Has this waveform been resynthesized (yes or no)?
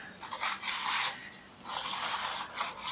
no